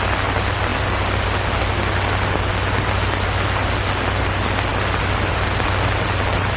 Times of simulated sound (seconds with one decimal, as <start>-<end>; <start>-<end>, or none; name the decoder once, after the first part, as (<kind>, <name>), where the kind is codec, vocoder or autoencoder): none